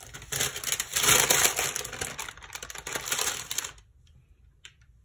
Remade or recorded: recorded